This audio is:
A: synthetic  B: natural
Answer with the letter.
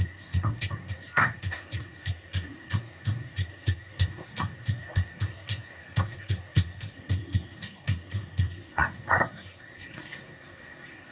A